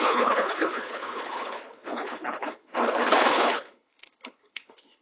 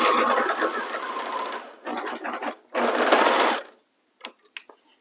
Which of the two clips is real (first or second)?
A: second